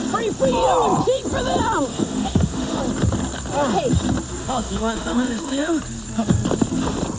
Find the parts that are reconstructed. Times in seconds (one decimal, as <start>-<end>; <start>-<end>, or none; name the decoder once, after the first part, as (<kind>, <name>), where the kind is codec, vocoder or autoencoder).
1.9-2.8 (autoencoder, DAC-VAE); 4.4-5.8